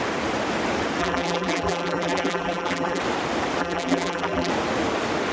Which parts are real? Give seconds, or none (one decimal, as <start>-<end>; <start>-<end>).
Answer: 0.0-1.0; 3.0-3.6; 4.5-5.3